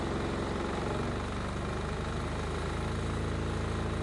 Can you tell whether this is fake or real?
real